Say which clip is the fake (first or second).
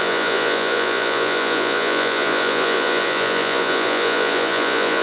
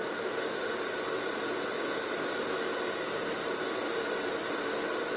first